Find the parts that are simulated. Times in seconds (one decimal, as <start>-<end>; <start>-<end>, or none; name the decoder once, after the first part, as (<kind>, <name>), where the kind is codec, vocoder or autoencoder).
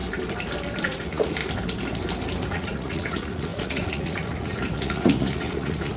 0.8-1.4 (vocoder, Vocos); 2.5-6.0